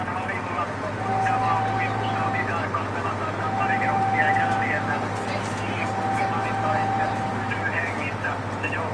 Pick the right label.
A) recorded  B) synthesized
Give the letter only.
A